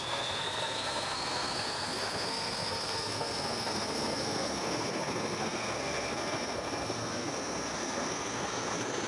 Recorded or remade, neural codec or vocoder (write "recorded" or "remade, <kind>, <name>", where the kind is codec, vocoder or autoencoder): remade, codec, SNAC